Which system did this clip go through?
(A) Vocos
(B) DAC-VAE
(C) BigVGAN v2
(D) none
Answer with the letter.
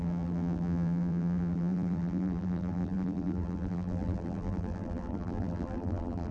C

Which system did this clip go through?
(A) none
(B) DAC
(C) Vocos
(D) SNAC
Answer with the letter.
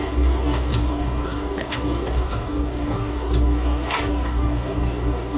B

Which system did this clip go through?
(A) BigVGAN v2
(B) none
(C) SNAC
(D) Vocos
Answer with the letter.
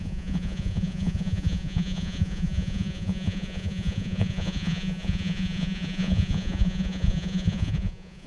D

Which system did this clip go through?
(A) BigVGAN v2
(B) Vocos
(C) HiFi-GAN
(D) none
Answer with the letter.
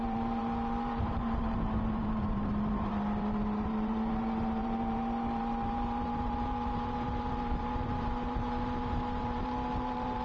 A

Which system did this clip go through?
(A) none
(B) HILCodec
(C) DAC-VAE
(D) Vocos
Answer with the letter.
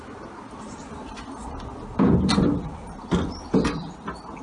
A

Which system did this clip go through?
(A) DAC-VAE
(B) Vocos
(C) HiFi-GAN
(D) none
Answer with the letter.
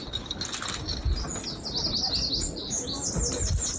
D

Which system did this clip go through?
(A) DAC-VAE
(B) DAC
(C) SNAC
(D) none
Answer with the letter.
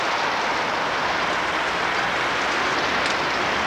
D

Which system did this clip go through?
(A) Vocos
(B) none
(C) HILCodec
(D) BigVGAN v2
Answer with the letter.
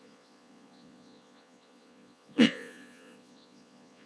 A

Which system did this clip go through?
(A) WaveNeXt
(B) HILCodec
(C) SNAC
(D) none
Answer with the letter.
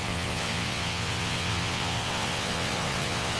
A